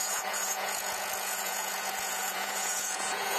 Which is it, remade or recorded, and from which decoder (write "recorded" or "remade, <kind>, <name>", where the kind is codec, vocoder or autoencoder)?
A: remade, vocoder, Vocos